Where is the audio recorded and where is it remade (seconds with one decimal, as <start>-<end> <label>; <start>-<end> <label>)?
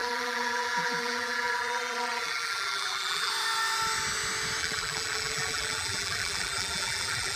0.0-3.3 remade; 3.3-4.6 recorded; 4.6-7.4 remade